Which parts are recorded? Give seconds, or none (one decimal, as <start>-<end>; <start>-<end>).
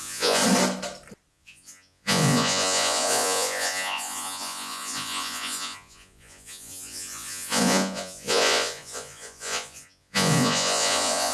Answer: 0.4-1.3